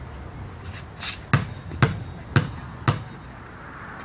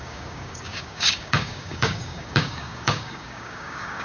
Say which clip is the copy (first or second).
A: second